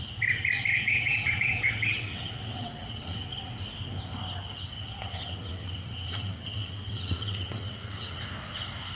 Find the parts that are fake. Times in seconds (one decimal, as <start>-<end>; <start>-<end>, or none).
0.7-3.5; 4.8-8.2